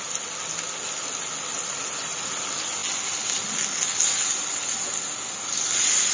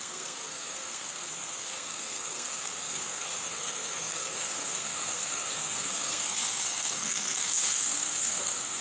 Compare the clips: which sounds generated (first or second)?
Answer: second